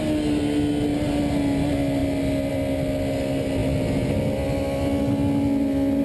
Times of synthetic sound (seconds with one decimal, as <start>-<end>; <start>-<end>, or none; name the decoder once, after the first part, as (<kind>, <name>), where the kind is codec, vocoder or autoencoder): none